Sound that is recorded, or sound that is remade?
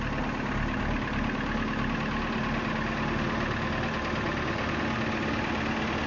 recorded